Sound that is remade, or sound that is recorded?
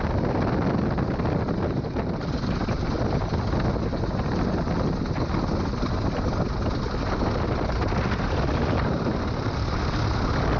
recorded